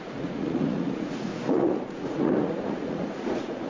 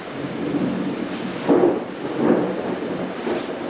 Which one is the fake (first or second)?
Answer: first